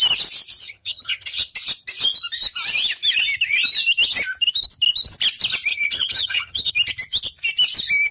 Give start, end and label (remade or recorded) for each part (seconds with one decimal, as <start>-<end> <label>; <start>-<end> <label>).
0.0-0.6 recorded; 0.6-1.5 remade; 1.5-5.7 recorded; 5.7-6.7 remade; 6.7-8.1 recorded